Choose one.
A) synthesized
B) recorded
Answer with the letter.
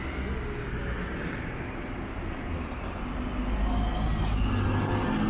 B